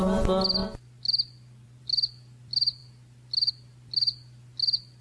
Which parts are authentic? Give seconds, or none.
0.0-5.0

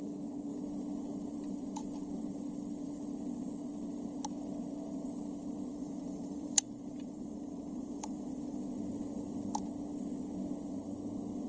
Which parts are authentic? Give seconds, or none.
0.0-5.7; 8.6-11.5

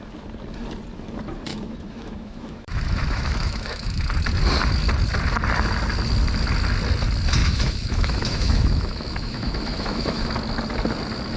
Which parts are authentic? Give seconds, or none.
0.0-1.5; 4.0-7.4; 10.3-11.4

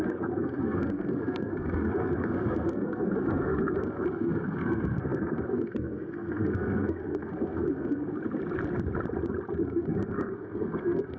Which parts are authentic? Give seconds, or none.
8.1-9.6

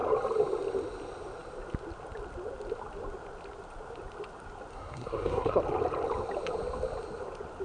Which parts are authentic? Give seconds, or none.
0.0-4.7; 5.6-7.6

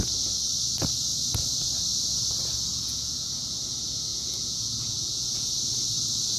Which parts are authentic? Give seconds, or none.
0.0-2.7; 3.3-4.1; 5.5-6.4

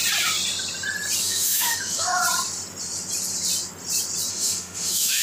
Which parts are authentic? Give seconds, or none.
0.0-1.2; 2.2-4.3

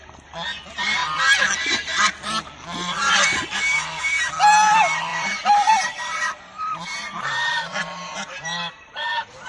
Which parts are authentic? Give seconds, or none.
0.0-5.1